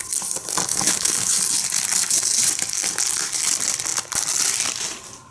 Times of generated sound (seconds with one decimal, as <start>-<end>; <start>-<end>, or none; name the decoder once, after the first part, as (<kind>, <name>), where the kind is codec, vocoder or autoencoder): 0.7-1.3 (codec, DAC)